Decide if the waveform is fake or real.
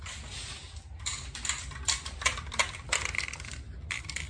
real